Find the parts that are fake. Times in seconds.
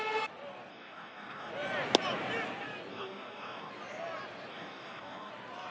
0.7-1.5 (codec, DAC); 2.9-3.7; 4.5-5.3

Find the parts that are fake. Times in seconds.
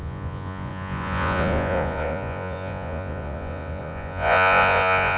0.0-5.2 (vocoder, Vocos)